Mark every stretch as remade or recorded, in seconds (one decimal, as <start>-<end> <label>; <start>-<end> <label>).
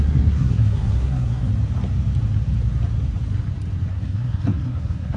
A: 0.0-1.5 remade; 1.5-3.9 recorded; 3.9-5.2 remade